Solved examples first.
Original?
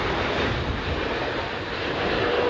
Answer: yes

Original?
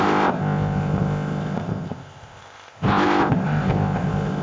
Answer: no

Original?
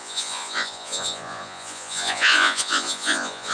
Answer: no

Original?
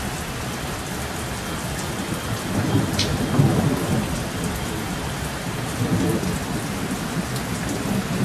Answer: yes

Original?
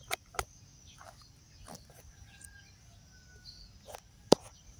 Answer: yes